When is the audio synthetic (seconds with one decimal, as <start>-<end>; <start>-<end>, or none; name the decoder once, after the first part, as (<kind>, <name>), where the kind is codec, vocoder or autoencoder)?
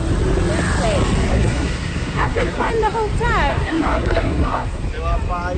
1.3-2.7 (codec, SNAC); 3.5-4.8